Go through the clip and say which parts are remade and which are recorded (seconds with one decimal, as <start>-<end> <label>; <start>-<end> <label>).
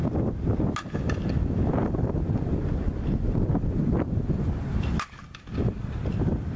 0.0-1.0 recorded; 1.0-6.6 remade